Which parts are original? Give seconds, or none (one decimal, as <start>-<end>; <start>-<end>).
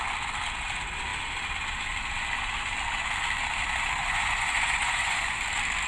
0.0-4.0; 5.4-5.9